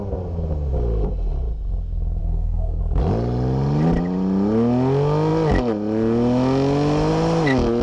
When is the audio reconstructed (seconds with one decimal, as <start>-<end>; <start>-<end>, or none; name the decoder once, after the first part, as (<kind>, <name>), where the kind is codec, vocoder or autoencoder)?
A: 2.2-2.8 (codec, DAC)